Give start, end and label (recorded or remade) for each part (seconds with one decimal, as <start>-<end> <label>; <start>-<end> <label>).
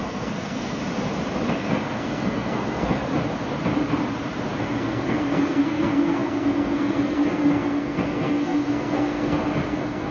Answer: 0.0-0.8 remade; 0.8-1.5 recorded; 1.5-3.0 remade; 3.0-4.6 recorded; 4.6-10.1 remade